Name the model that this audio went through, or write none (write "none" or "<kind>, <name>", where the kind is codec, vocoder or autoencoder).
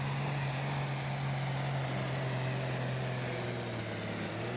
none